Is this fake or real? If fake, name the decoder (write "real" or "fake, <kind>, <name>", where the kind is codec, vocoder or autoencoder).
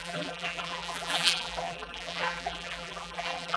fake, vocoder, BigVGAN v2